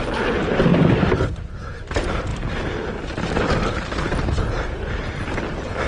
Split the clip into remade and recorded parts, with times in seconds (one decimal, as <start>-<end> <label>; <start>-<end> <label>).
0.0-0.7 recorded; 0.7-1.7 remade; 1.7-2.3 recorded; 2.3-4.2 remade; 4.2-5.9 recorded